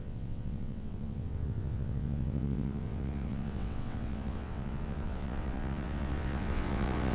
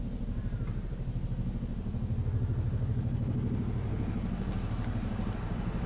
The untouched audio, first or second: second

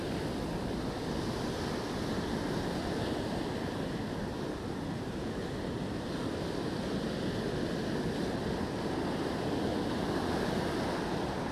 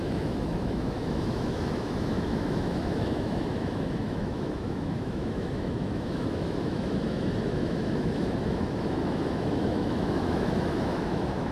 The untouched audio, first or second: first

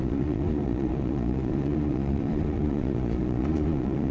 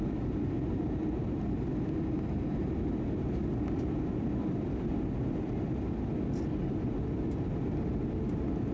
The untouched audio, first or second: second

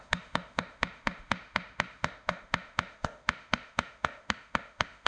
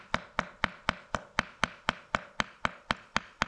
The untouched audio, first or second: second